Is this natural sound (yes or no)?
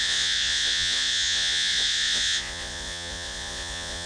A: no